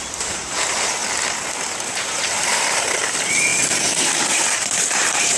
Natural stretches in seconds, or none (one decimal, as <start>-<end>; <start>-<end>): 1.0-1.8